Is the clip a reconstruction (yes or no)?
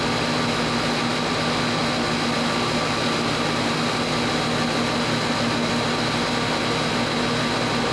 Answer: no